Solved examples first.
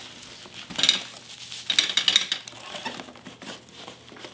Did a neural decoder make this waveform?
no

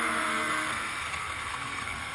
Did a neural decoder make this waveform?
yes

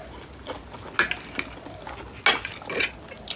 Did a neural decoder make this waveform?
no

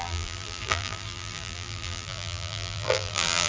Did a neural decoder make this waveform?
yes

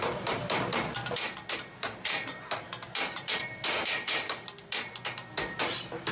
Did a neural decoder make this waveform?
no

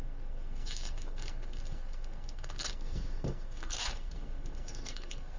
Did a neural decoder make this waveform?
yes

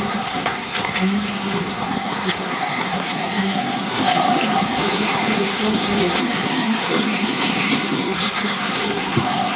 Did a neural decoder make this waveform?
yes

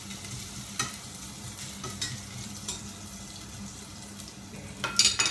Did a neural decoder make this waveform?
no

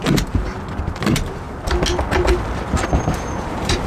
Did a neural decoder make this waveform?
no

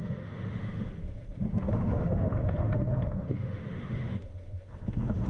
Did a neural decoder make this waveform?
yes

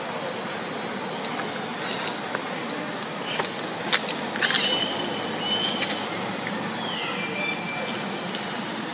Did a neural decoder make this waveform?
no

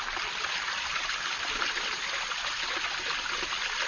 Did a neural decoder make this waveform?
no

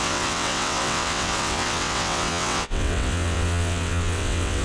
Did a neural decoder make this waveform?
yes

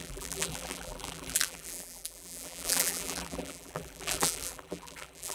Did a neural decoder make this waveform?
yes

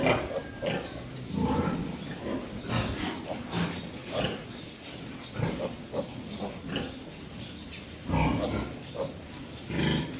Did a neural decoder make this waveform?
no